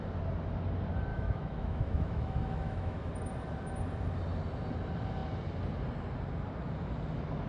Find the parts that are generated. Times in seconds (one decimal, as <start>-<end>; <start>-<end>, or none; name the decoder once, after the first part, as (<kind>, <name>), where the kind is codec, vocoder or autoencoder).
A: 1.1-3.1 (autoencoder, DAC-VAE)